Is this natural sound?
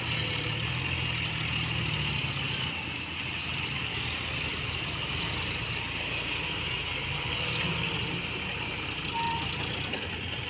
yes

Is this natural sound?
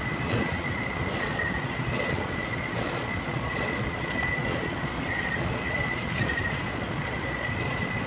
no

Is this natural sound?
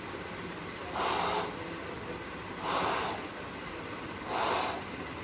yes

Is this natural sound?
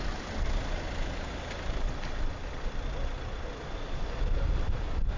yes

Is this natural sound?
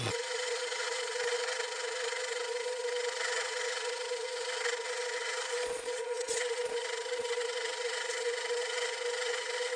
no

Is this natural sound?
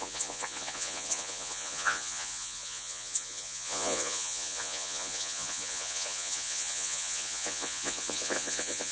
no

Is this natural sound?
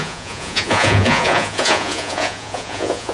no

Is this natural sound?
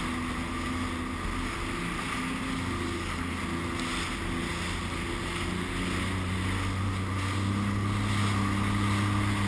yes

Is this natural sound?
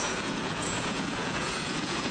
no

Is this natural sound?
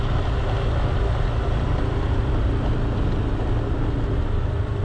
yes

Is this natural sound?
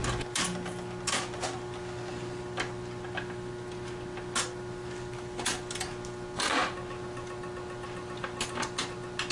yes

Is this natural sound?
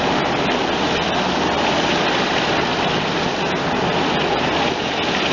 yes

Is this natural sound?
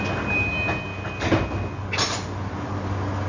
yes